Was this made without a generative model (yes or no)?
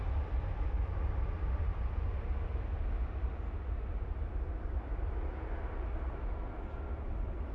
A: yes